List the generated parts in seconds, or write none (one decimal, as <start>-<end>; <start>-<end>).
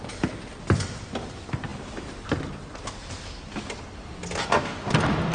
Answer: none